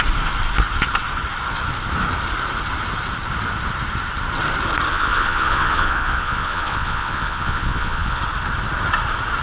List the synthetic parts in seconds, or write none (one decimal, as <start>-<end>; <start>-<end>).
4.9-8.2